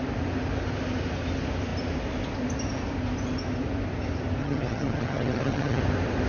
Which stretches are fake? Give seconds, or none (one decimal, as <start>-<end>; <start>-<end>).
4.4-5.8